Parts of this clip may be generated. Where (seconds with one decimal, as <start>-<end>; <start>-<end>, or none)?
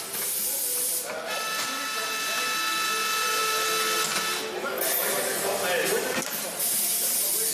none